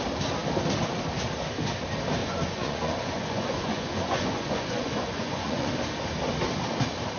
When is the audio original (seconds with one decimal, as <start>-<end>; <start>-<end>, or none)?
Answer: 0.0-2.2; 5.7-7.2